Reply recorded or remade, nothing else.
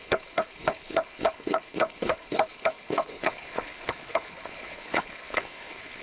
remade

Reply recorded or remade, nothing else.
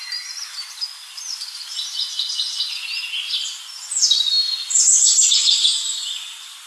recorded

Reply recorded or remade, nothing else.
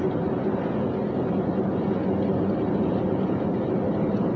recorded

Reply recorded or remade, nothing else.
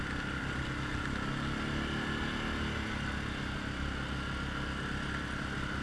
recorded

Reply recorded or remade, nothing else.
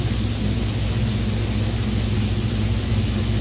recorded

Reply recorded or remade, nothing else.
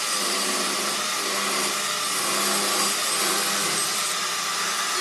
recorded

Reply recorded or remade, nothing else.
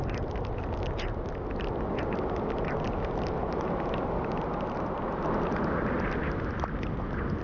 recorded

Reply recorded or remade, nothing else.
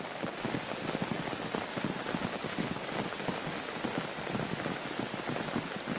recorded